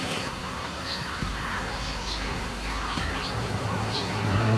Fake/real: fake